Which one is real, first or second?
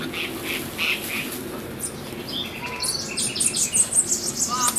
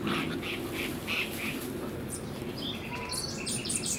first